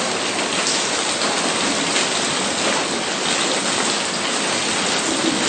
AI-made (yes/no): no